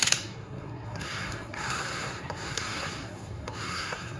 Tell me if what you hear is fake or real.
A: fake